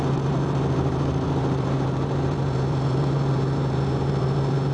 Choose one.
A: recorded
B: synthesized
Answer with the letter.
B